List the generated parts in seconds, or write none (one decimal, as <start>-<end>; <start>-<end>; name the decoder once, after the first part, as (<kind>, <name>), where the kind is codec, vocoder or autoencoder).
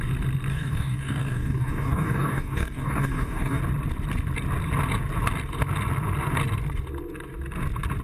0.5-3.6 (codec, DAC)